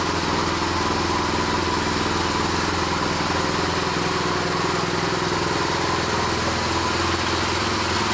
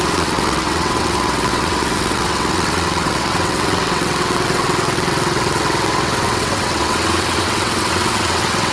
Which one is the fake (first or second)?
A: second